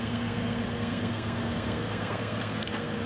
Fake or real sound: fake